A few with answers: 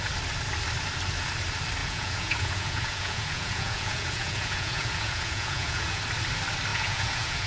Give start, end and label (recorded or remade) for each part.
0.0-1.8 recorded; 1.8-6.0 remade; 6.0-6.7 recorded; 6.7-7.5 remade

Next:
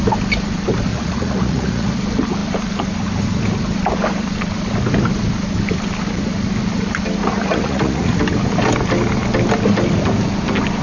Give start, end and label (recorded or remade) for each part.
0.0-0.9 recorded; 0.9-1.9 remade; 1.9-7.2 recorded; 7.2-8.2 remade; 8.2-10.8 recorded

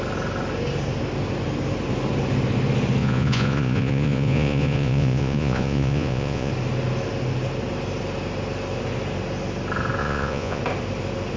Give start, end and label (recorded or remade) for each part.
0.0-3.0 recorded; 3.0-6.5 remade; 6.5-10.0 recorded; 10.0-10.6 remade; 10.6-11.4 recorded

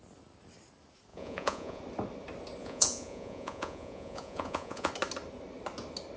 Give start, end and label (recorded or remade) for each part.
0.0-1.1 recorded; 1.1-1.8 remade; 1.8-2.6 recorded; 2.6-4.9 remade; 4.9-6.2 recorded